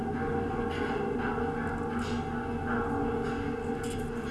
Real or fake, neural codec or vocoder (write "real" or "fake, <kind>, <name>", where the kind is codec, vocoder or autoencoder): real